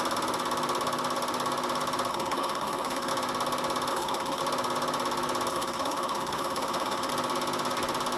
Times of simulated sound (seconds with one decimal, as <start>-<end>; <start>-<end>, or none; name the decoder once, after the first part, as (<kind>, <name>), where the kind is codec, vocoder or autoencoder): 2.1-3.1 (codec, SNAC); 3.9-4.4; 5.5-7.1